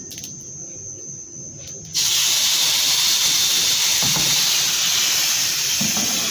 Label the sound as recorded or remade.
recorded